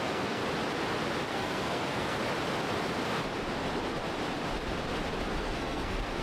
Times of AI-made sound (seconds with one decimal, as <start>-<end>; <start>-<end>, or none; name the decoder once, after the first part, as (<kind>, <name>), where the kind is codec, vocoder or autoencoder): 0.0-0.4 (codec, SNAC); 1.3-2.2; 5.4-6.2